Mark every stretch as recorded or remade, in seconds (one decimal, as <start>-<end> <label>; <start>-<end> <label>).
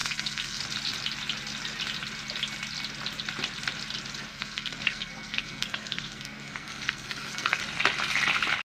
0.0-0.6 remade; 0.6-4.3 recorded; 4.3-7.6 remade; 7.6-8.7 recorded